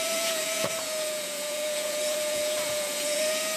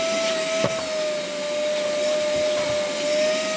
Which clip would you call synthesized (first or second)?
first